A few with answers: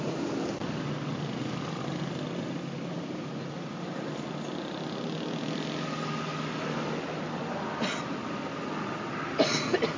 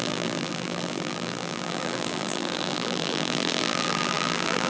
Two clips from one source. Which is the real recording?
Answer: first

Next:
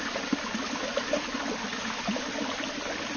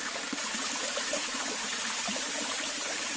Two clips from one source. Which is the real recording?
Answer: first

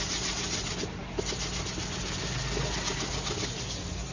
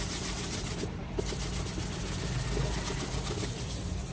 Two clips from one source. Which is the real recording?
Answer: first